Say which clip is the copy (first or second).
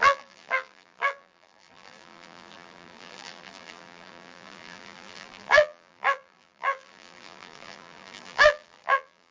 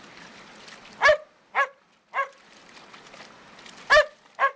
first